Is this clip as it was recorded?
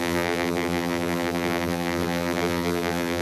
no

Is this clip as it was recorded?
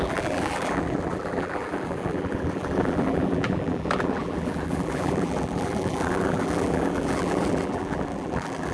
no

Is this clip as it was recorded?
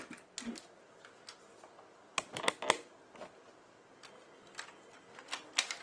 yes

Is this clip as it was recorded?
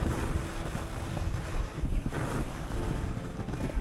yes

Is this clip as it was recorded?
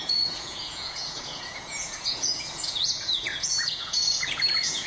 no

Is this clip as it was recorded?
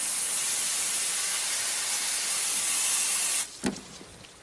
yes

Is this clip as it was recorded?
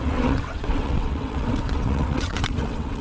no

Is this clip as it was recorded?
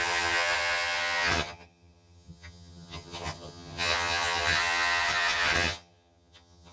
no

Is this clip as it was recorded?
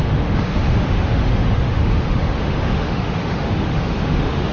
no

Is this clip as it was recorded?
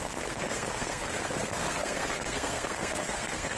no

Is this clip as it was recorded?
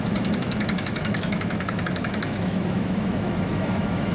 no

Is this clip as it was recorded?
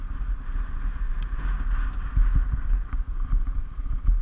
yes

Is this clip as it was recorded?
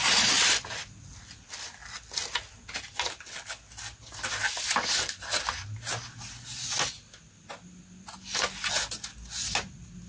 yes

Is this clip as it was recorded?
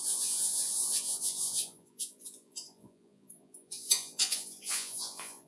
no